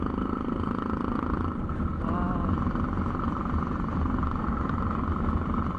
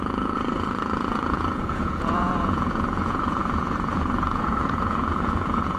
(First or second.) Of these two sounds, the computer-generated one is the second